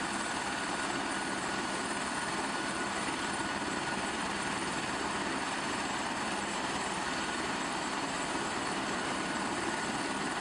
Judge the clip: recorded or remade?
remade